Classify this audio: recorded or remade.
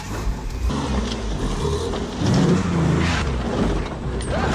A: recorded